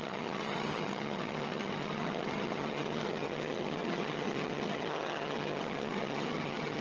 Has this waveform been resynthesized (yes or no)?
yes